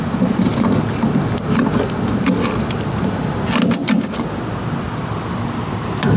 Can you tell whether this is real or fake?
real